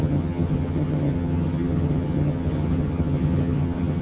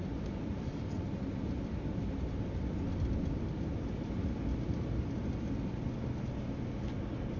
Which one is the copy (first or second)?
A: first